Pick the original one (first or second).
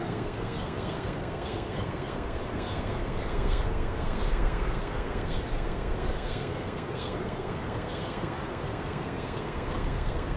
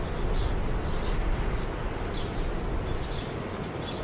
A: second